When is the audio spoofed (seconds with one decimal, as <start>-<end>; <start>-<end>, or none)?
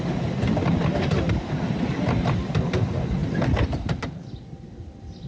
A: none